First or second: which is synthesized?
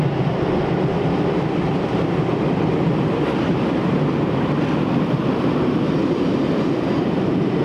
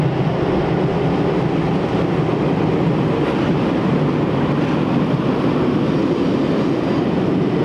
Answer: first